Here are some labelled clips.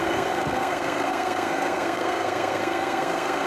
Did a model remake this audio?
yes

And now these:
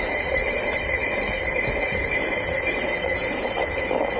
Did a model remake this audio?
no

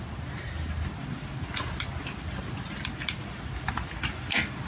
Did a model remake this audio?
no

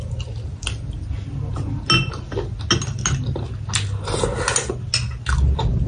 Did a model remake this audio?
no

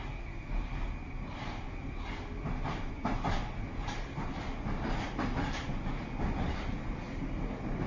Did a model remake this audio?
no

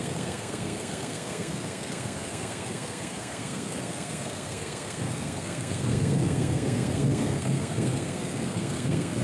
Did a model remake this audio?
yes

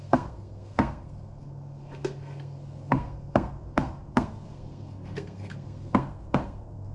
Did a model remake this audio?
yes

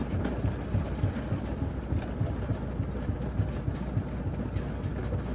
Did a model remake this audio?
no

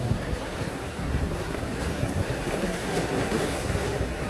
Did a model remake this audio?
yes